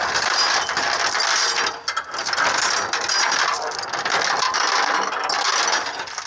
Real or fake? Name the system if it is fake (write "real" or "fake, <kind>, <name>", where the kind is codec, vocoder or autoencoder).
real